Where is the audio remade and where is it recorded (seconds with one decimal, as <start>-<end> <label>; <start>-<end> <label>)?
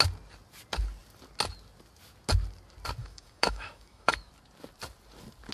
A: 0.0-3.0 recorded; 3.0-4.3 remade; 4.3-5.5 recorded